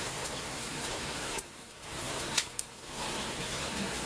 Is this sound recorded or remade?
remade